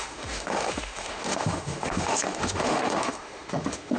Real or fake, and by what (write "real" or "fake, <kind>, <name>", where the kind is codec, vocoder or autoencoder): fake, autoencoder, DAC-VAE